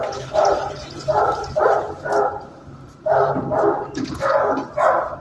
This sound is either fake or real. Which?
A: fake